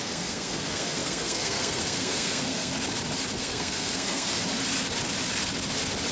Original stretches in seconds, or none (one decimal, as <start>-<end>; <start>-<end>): 2.7-3.4; 4.3-6.1